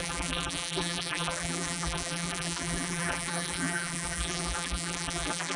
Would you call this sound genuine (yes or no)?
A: no